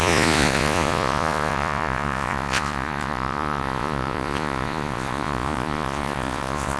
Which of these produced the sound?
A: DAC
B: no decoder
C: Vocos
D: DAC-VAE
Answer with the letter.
C